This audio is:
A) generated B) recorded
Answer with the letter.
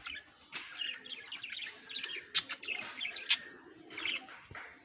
B